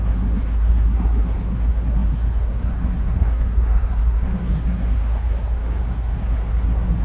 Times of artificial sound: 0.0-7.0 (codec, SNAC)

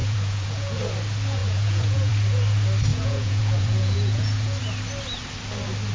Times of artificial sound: 0.0-0.8 (vocoder, Vocos); 1.4-2.1; 2.9-4.6

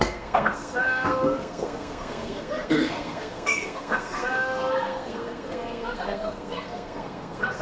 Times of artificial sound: 0.0-7.6 (codec, SNAC)

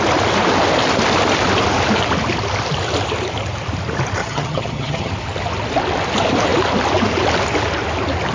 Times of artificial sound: 4.2-5.1 (vocoder, HiFi-GAN)

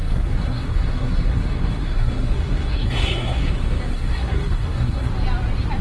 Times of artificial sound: 0.0-3.5 (codec, SNAC); 3.9-5.1

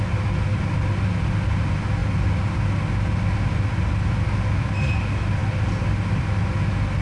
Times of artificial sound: none

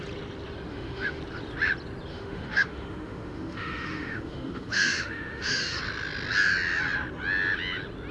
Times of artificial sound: 0.7-1.2 (autoencoder, DAC-VAE); 2.1-5.8

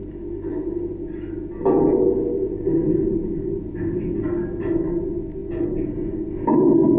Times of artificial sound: none